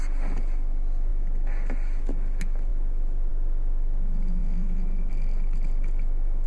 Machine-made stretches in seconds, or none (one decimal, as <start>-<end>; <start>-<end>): none